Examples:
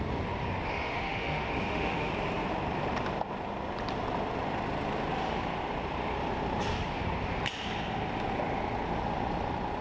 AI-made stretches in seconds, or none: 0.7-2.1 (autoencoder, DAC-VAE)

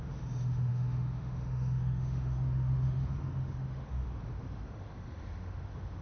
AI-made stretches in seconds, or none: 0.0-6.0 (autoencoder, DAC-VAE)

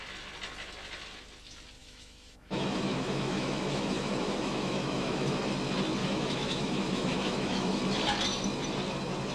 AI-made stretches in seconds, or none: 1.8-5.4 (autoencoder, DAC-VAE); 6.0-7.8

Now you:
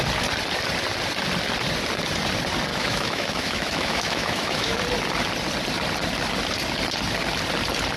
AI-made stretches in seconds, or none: 2.7-4.8 (autoencoder, DAC-VAE)

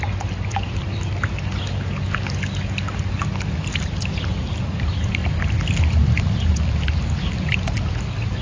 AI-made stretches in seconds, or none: none

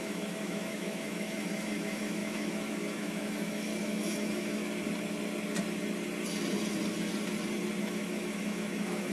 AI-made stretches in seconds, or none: 0.0-4.6 (autoencoder, DAC-VAE); 7.8-9.1

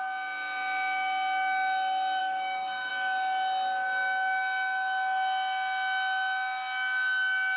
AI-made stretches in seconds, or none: 2.2-2.9 (autoencoder, DAC-VAE)